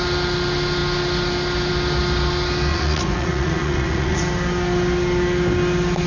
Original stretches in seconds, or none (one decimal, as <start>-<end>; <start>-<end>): 0.0-2.7; 4.2-6.1